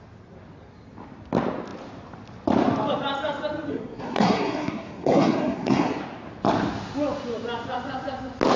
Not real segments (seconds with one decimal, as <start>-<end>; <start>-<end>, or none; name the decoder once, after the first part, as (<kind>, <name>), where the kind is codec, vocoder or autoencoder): 3.7-6.0 (codec, SNAC)